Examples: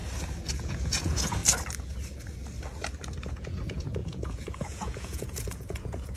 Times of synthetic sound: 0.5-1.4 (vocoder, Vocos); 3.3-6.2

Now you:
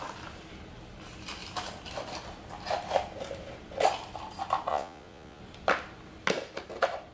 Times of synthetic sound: 4.7-5.4 (vocoder, Vocos)

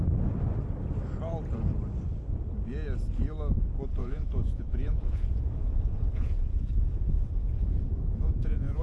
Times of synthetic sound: 4.0-8.8 (vocoder, Vocos)

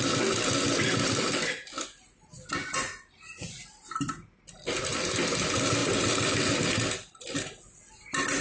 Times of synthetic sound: none

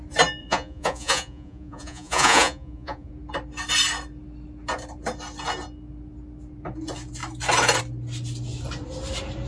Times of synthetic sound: 0.4-3.1 (vocoder, Vocos)

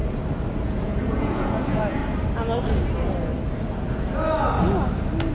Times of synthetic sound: 0.6-2.0 (vocoder, Vocos)

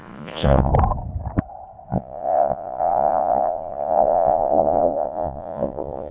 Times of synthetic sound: 0.0-0.7 (vocoder, Vocos); 1.9-6.1

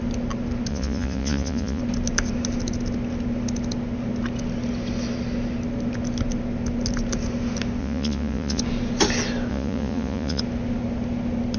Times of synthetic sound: 0.7-1.8 (vocoder, Vocos); 7.8-8.6; 9.5-10.4